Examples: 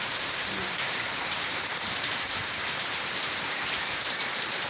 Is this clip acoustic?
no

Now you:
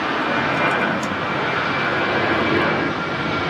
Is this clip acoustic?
yes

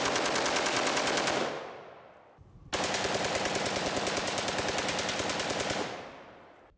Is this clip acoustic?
yes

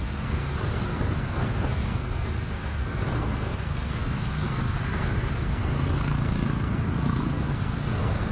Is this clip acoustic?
no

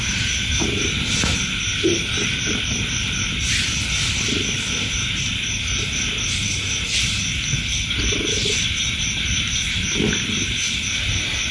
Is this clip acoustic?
yes